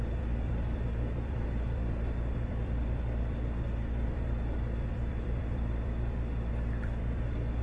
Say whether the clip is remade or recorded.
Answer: remade